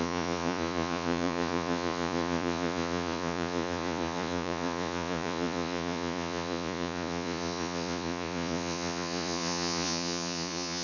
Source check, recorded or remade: remade